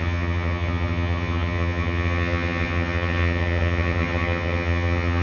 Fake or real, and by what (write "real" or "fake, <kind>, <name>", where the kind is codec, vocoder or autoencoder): fake, vocoder, HiFi-GAN